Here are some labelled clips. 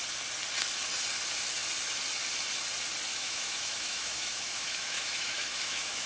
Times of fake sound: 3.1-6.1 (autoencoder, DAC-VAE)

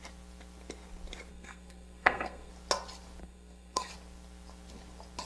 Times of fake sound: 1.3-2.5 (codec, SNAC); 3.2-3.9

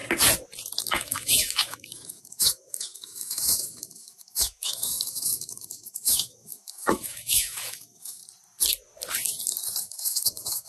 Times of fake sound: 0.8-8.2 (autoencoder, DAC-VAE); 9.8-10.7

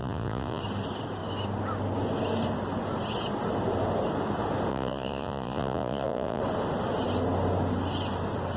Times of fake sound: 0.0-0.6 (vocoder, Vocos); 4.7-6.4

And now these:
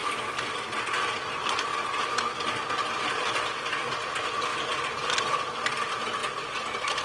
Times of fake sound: 0.0-1.7 (vocoder, BigVGAN v2); 3.0-4.5; 5.5-6.2

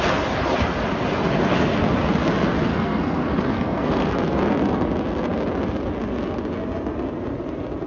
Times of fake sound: 2.7-4.1 (codec, SNAC)